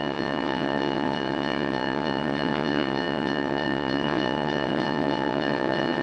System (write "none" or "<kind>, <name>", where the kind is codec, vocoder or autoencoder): vocoder, WaveNeXt